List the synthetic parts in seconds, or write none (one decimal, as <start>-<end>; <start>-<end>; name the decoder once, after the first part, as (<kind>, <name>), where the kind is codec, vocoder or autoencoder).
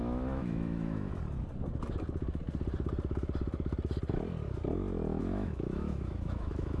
0.0-1.1 (autoencoder, DAC-VAE); 5.2-6.8